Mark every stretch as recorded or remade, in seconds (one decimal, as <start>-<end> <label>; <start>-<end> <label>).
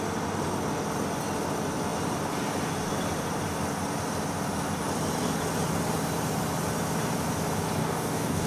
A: 0.0-7.8 recorded; 7.8-8.5 remade